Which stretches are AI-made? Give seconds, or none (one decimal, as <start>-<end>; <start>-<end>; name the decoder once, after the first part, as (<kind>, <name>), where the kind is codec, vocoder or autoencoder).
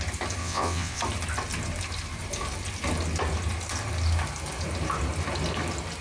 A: 0.4-1.0 (vocoder, WaveNeXt)